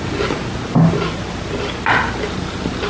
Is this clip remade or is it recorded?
recorded